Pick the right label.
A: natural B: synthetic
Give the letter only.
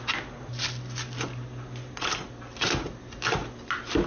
A